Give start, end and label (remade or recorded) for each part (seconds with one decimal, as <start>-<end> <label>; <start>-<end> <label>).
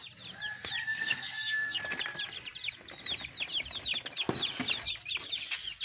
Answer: 0.0-0.8 recorded; 0.8-1.8 remade; 1.8-5.8 recorded